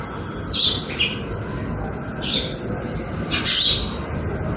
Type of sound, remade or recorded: recorded